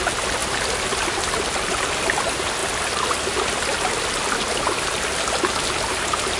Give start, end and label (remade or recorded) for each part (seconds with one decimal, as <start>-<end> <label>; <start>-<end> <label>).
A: 0.0-6.4 recorded